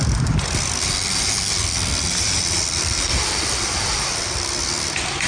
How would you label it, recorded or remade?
remade